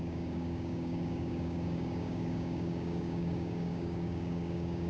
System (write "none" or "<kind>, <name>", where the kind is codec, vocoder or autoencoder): codec, DAC